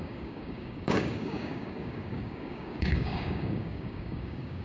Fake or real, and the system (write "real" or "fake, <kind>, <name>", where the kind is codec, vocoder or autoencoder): fake, codec, DAC